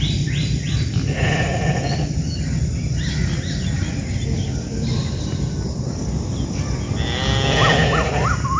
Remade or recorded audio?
recorded